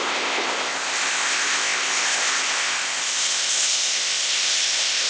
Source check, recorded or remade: remade